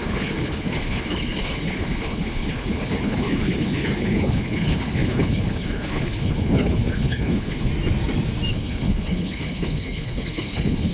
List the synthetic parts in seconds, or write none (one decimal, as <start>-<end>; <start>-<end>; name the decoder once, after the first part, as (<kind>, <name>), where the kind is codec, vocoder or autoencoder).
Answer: 0.0-7.7 (codec, HILCodec); 8.5-10.9

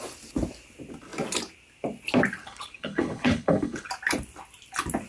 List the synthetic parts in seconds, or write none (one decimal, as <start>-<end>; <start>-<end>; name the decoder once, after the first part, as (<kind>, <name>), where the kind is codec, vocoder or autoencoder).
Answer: 2.4-3.9 (codec, HILCodec)

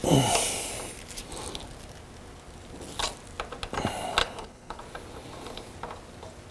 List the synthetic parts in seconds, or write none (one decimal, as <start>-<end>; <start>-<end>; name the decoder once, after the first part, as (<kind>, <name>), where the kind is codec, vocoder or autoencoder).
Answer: 4.2-4.8 (codec, HILCodec)

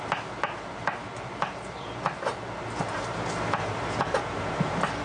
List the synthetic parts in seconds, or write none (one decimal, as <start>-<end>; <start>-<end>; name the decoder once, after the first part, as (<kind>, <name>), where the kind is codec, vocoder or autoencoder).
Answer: none

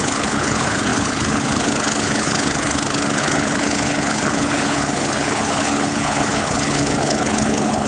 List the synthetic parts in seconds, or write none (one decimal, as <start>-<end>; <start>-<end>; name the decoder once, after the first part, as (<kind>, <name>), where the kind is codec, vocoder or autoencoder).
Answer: 0.0-7.9 (codec, HILCodec)